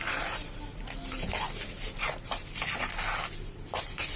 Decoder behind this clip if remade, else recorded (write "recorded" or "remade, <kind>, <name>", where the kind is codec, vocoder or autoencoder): recorded